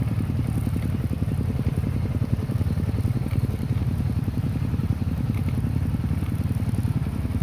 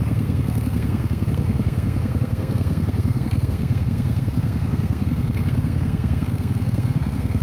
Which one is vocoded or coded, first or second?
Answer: second